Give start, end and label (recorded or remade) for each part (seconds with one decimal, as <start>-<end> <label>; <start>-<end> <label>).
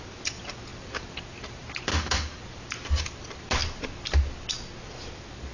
0.0-1.9 recorded; 1.9-2.4 remade; 2.4-5.5 recorded